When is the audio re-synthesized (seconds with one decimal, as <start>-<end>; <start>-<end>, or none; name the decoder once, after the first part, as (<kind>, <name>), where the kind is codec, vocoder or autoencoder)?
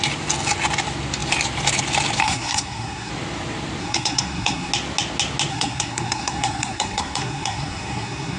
2.2-3.1 (codec, SNAC); 3.8-4.7; 5.5-8.4